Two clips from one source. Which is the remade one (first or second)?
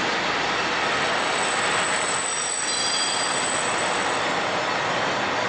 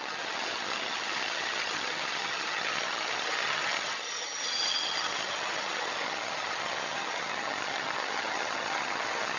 second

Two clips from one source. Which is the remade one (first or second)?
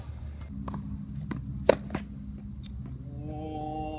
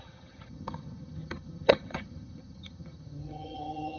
second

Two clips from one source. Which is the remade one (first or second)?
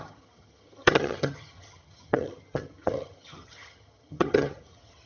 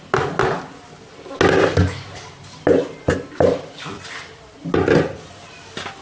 first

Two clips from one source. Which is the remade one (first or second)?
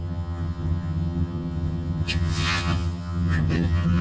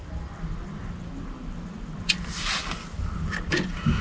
first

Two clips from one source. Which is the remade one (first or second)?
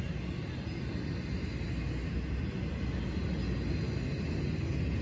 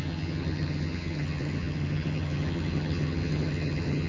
second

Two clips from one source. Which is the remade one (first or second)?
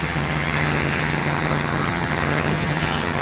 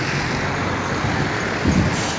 first